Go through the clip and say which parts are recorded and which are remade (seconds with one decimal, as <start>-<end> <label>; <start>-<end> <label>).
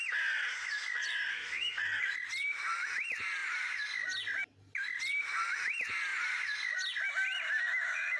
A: 0.0-1.3 recorded; 1.3-1.8 remade; 1.8-8.2 recorded